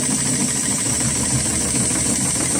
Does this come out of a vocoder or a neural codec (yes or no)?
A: yes